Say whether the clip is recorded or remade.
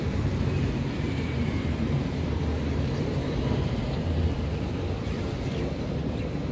remade